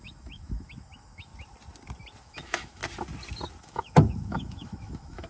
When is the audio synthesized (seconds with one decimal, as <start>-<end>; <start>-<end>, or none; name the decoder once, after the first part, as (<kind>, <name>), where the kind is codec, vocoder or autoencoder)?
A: 0.0-1.3 (autoencoder, DAC-VAE); 2.2-2.8; 3.6-5.3